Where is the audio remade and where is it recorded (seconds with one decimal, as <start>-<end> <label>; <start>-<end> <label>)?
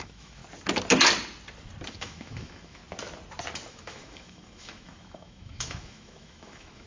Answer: 0.0-0.4 remade; 0.4-1.9 recorded; 1.9-2.8 remade; 2.8-3.7 recorded; 3.7-6.9 remade